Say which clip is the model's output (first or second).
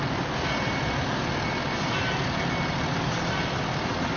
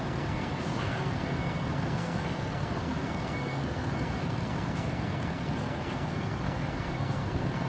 second